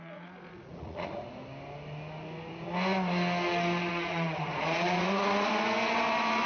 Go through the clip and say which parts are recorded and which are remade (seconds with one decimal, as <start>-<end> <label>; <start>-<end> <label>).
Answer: 0.0-1.4 remade; 1.4-3.9 recorded; 3.9-5.5 remade; 5.5-6.5 recorded